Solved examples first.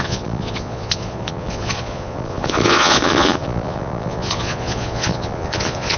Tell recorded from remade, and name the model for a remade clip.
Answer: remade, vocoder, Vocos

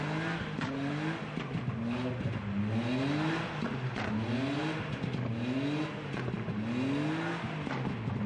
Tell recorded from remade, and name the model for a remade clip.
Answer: recorded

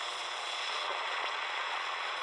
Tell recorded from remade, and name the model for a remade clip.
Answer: remade, vocoder, Vocos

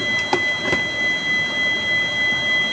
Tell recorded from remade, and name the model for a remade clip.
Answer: recorded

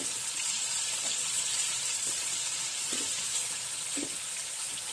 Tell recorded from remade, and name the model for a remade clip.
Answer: remade, vocoder, Vocos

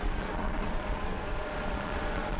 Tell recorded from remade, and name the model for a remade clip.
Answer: remade, vocoder, Vocos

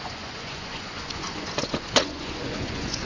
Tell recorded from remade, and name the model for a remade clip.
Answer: remade, vocoder, Vocos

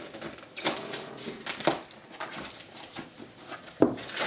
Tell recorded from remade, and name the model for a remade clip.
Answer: recorded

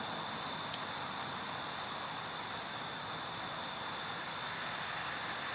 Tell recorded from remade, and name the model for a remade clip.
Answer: recorded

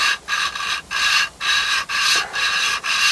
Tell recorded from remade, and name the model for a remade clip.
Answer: recorded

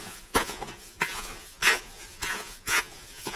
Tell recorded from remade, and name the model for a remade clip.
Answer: remade, vocoder, Vocos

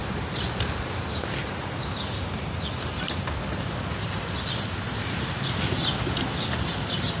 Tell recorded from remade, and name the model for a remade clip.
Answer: recorded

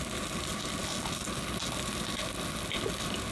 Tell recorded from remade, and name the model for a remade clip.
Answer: recorded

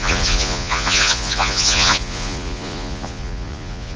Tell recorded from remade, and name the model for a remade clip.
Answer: remade, vocoder, Vocos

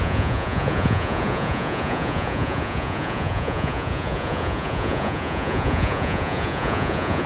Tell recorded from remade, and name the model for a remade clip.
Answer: remade, vocoder, Vocos